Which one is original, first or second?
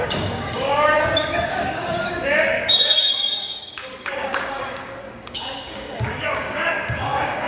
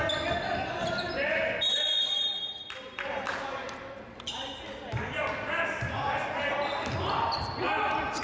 second